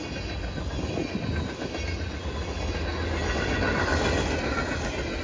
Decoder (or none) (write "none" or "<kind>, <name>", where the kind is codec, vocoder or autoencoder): none